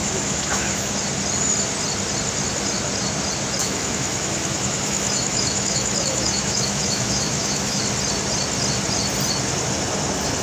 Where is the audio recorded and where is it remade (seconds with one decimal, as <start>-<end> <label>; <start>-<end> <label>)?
0.0-0.9 remade; 0.9-3.6 recorded; 3.6-7.8 remade; 7.8-10.4 recorded